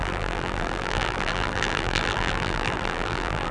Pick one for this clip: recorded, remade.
remade